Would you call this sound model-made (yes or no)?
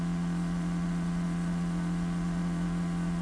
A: yes